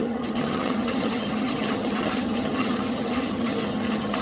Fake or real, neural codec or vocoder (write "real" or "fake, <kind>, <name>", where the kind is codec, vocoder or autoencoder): fake, vocoder, HiFi-GAN